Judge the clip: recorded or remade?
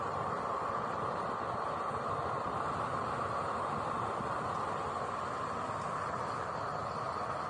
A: recorded